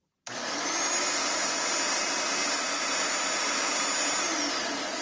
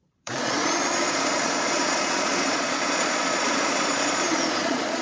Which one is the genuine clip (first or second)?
first